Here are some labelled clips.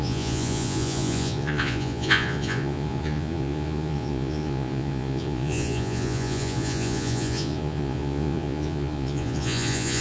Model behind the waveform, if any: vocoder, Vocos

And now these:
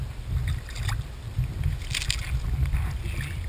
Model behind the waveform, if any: none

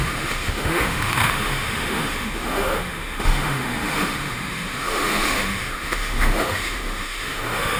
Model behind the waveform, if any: autoencoder, DAC-VAE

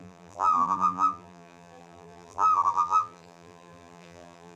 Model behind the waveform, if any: vocoder, BigVGAN v2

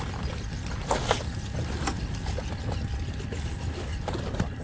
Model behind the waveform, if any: none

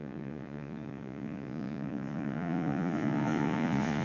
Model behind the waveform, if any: vocoder, Vocos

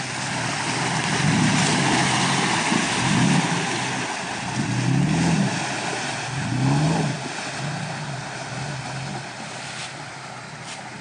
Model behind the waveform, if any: none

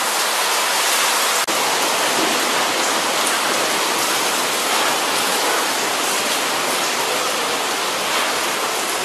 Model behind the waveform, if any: none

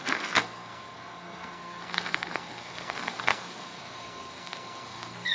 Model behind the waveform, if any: codec, SNAC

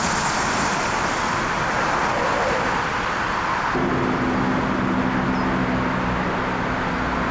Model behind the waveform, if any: none